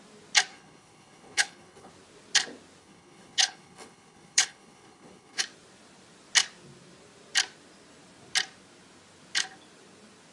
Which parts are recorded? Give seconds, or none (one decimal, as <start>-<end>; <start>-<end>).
0.0-0.5; 1.9-2.8; 5.4-10.3